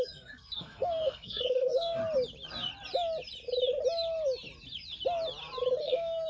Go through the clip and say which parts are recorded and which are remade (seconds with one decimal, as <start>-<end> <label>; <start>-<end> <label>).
0.0-2.0 remade; 2.0-5.8 recorded; 5.8-6.3 remade